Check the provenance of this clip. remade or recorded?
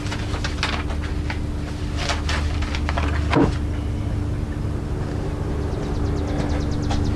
recorded